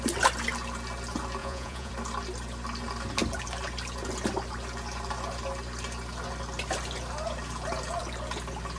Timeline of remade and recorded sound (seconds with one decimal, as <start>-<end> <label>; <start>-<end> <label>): 0.0-1.4 recorded; 1.4-1.9 remade; 1.9-8.8 recorded